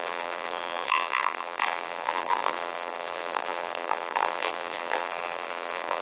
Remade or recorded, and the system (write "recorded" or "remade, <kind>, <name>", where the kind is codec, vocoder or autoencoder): remade, vocoder, BigVGAN v2